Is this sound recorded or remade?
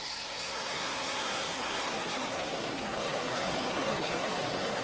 remade